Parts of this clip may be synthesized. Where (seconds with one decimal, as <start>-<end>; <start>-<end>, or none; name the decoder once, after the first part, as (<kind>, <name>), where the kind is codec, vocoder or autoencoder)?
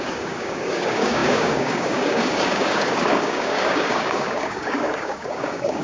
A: 0.0-5.8 (codec, DAC)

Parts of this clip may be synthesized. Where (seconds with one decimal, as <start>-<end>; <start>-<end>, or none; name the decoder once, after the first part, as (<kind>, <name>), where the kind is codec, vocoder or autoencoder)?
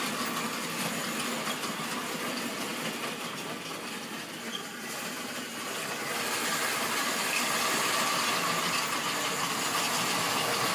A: none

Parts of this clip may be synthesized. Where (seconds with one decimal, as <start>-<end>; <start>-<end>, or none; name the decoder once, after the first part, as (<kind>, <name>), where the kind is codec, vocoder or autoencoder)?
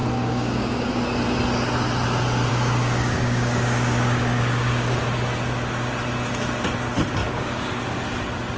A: 0.0-0.9 (codec, DAC); 2.5-5.0; 7.2-7.8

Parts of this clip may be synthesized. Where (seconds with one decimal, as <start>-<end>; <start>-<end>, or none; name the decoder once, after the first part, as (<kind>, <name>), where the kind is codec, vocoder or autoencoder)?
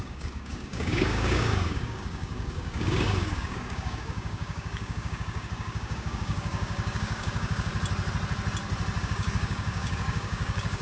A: 0.0-7.7 (codec, DAC); 9.0-10.8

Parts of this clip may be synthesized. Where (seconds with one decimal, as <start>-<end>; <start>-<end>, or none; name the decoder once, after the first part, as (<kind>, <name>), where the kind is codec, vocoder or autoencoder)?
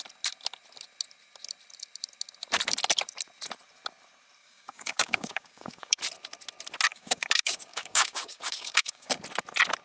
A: 4.4-6.0 (codec, DAC); 6.9-9.2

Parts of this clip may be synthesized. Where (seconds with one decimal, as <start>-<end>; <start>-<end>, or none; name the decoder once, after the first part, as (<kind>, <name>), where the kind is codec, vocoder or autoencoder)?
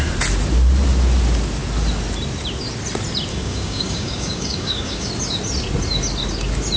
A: 3.3-5.1 (codec, DAC)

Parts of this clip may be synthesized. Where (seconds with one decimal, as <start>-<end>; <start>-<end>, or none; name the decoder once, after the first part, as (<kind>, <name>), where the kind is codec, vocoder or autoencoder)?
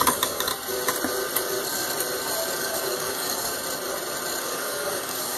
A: 0.0-0.5 (codec, DAC); 2.6-3.5; 4.4-5.4